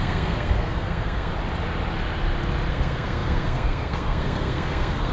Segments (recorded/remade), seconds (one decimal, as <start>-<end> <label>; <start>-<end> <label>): 0.0-1.3 remade; 1.3-2.7 recorded; 2.7-5.1 remade